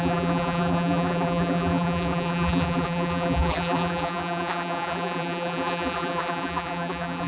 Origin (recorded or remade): remade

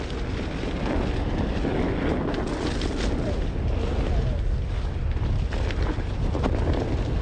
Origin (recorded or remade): recorded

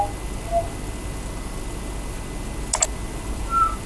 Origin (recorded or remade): recorded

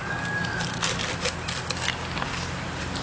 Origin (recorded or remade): recorded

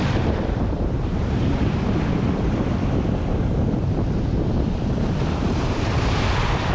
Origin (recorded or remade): remade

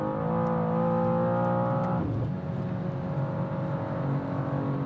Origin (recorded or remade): recorded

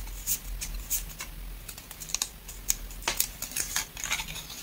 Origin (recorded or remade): recorded